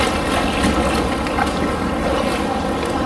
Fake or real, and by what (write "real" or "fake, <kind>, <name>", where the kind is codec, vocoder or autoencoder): real